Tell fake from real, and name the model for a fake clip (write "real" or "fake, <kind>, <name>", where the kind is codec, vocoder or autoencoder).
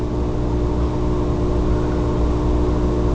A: real